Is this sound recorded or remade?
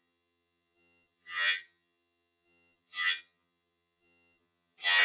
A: remade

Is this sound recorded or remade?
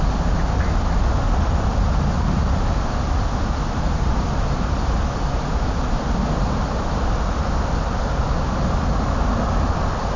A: recorded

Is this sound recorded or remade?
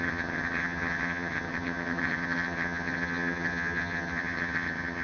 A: remade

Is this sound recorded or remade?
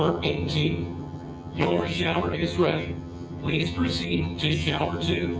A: remade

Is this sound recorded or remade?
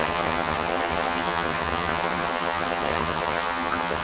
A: remade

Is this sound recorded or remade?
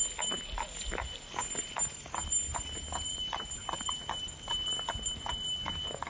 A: recorded